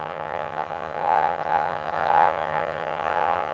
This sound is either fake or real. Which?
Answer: fake